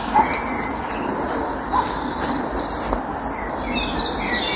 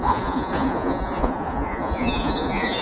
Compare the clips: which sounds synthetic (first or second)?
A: second